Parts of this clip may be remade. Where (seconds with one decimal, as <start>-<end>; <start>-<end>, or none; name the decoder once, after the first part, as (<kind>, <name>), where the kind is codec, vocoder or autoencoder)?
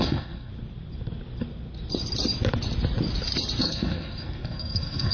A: 0.0-0.5 (codec, SNAC); 3.6-5.1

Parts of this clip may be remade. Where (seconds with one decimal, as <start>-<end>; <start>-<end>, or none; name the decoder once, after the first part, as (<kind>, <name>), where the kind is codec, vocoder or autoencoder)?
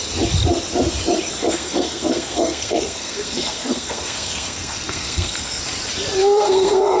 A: 1.4-5.6 (codec, SNAC); 6.2-7.0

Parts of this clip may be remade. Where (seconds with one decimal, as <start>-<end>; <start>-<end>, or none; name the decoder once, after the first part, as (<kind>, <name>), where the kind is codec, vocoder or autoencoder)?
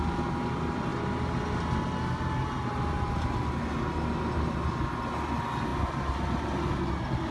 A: none